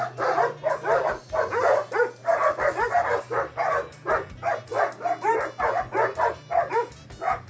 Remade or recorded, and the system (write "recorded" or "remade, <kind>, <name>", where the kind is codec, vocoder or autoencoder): recorded